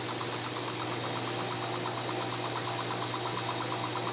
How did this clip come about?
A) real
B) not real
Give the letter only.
A